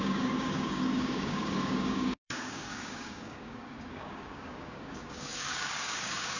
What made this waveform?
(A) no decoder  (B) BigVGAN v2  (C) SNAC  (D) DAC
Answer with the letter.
D